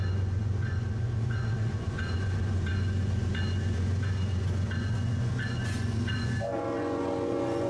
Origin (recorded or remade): remade